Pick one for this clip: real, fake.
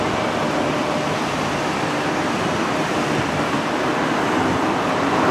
fake